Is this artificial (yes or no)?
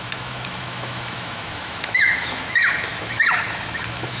yes